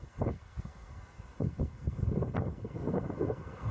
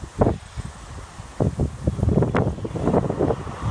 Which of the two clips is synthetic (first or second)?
first